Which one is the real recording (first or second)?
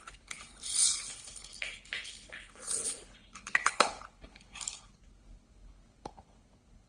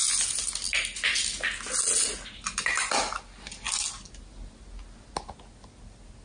second